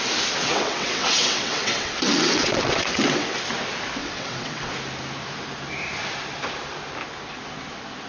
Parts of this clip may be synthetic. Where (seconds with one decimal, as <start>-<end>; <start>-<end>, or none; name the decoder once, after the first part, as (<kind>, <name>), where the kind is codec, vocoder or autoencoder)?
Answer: 0.4-3.4 (vocoder, WaveNeXt); 4.0-4.7